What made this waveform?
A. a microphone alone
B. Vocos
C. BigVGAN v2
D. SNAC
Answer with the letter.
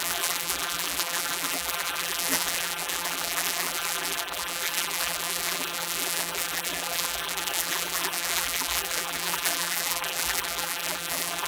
C